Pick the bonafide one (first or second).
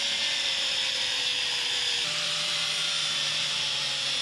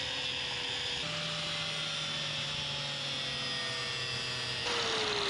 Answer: second